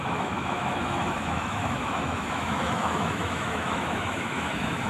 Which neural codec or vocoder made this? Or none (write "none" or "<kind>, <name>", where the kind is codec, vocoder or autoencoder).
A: autoencoder, DAC-VAE